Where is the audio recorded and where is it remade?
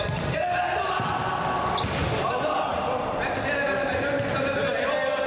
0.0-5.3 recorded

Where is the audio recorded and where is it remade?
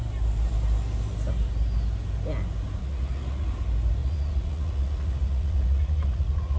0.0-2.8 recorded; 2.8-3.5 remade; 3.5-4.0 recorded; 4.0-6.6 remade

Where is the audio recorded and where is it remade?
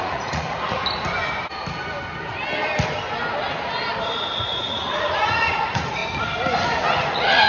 0.0-0.8 remade; 0.8-4.4 recorded; 4.4-6.0 remade; 6.0-7.1 recorded; 7.1-7.5 remade